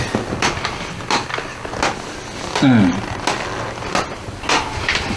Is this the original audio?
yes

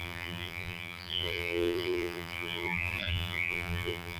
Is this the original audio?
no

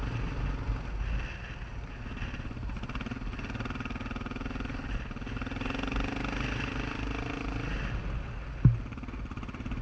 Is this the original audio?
yes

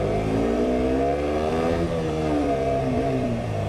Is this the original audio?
no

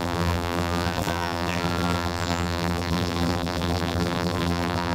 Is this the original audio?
no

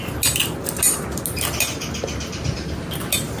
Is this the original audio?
yes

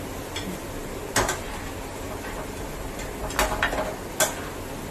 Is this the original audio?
yes